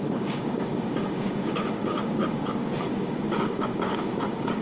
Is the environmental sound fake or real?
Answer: fake